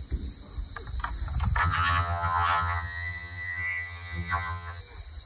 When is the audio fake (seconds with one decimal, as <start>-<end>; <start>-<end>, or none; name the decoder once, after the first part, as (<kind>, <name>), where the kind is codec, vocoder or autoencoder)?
1.6-4.8 (vocoder, HiFi-GAN)